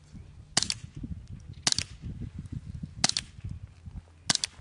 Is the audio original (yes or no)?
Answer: yes